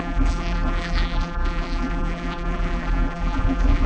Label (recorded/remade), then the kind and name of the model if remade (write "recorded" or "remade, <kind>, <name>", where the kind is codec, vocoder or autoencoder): remade, vocoder, BigVGAN v2